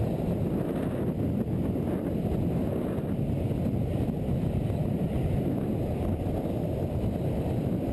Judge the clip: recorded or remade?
recorded